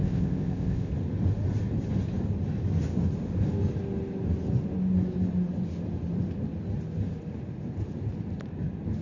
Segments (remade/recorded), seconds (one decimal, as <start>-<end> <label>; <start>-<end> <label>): 0.0-0.9 remade; 0.9-9.0 recorded